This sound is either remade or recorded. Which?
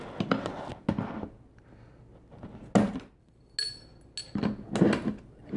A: recorded